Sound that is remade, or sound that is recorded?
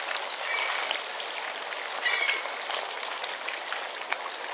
recorded